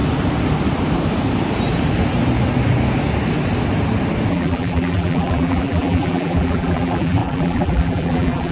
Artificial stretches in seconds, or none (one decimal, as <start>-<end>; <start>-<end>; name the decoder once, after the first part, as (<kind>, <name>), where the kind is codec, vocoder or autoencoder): 4.3-8.5 (vocoder, BigVGAN v2)